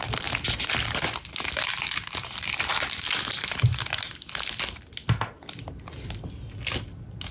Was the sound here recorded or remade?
recorded